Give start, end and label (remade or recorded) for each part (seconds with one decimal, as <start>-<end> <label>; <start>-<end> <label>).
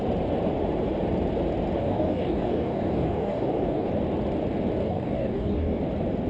0.0-1.8 recorded; 1.8-3.9 remade; 3.9-4.8 recorded; 4.8-5.8 remade; 5.8-6.3 recorded